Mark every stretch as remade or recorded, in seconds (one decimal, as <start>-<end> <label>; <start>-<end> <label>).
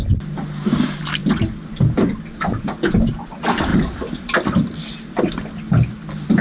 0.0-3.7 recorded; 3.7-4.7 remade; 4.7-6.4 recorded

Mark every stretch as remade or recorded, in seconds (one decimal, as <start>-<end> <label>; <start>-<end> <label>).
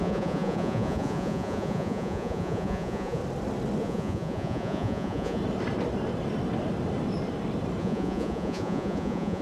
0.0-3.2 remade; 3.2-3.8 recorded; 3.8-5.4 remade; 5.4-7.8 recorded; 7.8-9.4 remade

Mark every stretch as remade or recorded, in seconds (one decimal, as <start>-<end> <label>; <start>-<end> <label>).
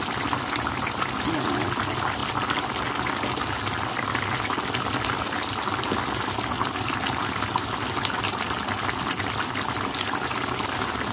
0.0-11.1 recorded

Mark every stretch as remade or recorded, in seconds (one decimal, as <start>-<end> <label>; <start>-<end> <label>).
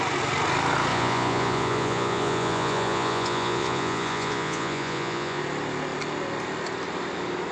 0.0-0.9 recorded; 0.9-5.4 remade; 5.4-7.5 recorded